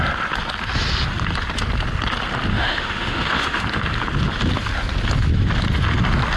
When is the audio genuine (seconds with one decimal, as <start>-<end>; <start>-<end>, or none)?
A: 0.0-2.5; 3.6-6.4